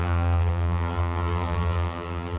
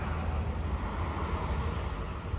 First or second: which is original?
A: second